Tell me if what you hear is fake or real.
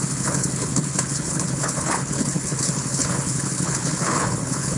fake